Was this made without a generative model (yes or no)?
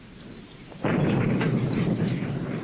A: no